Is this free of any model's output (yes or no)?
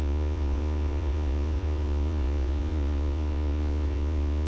no